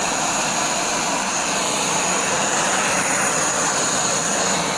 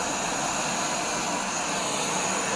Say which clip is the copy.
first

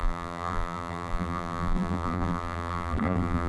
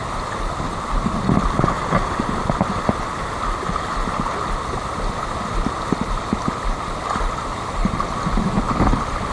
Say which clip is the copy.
first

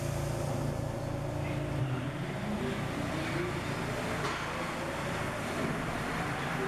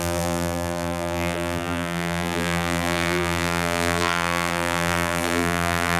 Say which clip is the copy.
second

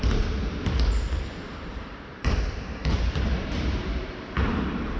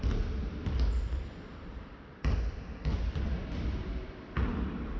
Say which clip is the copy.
first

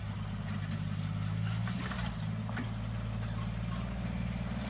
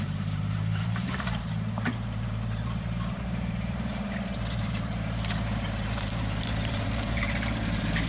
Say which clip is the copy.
second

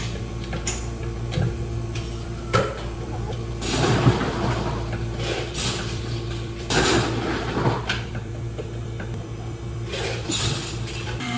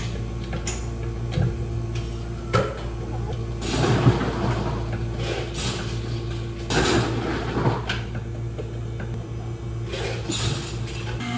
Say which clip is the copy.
first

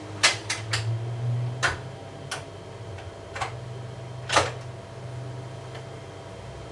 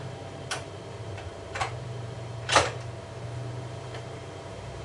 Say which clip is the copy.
second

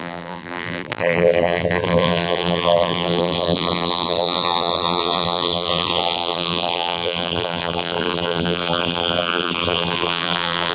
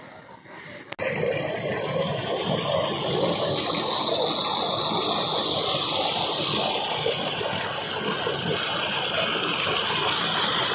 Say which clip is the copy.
first